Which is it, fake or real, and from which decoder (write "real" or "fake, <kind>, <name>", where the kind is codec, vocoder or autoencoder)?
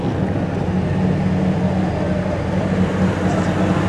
real